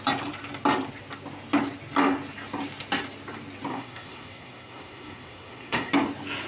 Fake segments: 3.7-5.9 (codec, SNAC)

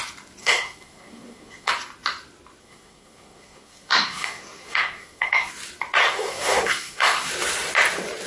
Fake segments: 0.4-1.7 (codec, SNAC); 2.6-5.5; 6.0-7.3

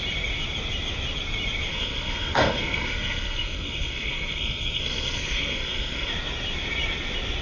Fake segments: 1.7-6.1 (codec, SNAC)